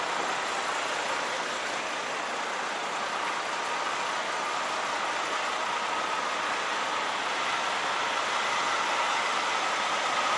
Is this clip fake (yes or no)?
no